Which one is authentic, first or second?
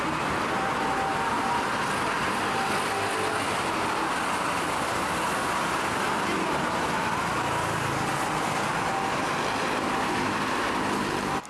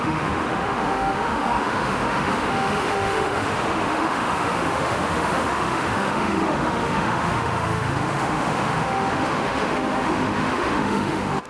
first